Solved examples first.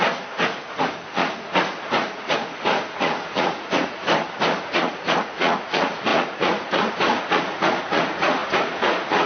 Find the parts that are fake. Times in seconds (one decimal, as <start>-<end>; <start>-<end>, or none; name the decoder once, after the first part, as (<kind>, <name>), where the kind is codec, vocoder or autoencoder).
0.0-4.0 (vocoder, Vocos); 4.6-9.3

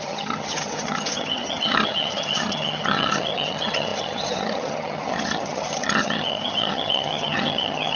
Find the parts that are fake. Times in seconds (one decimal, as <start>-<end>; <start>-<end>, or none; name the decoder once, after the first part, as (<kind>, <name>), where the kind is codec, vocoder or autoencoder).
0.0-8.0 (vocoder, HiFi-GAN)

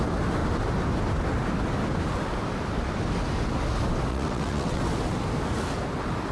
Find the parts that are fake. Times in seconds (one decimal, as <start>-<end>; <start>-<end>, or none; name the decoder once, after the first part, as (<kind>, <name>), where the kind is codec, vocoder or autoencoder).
4.1-4.8 (vocoder, WaveNeXt)

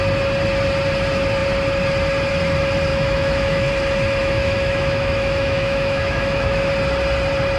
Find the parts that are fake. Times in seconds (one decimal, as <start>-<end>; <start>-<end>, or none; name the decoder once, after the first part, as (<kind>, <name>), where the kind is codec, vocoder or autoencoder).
2.9-3.7 (autoencoder, DAC-VAE); 4.2-6.7

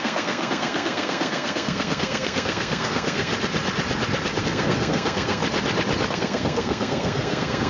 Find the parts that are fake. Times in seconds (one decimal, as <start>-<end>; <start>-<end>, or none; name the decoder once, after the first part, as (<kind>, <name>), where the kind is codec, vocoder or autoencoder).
0.0-3.3 (codec, SNAC); 4.4-5.4; 6.1-7.7

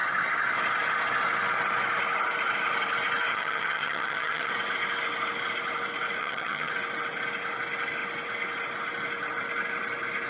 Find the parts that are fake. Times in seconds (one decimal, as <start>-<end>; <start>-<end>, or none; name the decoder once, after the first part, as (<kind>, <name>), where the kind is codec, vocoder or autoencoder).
3.3-4.5 (vocoder, HiFi-GAN); 6.2-6.7

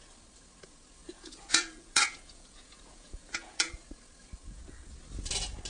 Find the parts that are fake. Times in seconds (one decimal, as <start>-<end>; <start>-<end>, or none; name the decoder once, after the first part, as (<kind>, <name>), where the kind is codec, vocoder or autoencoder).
1.0-3.8 (vocoder, Vocos); 4.4-4.9